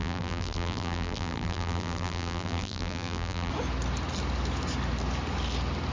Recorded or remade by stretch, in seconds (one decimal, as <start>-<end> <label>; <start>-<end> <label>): 0.0-3.5 remade; 3.5-5.9 recorded